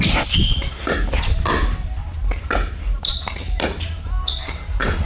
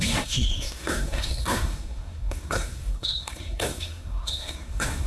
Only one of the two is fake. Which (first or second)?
second